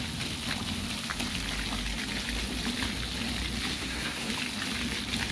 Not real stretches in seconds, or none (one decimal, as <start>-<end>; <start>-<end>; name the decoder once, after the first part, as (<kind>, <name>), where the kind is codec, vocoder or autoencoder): 3.7-4.3 (codec, SNAC)